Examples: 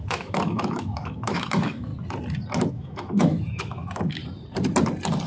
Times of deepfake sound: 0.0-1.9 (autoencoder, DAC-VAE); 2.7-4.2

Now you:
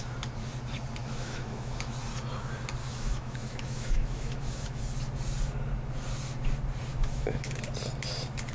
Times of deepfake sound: 1.0-1.9 (autoencoder, DAC-VAE); 2.8-4.8; 6.9-7.6

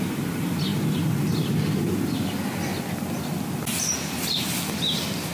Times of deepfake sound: none

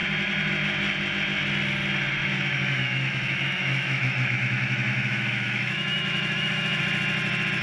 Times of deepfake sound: 2.2-6.8 (autoencoder, DAC-VAE)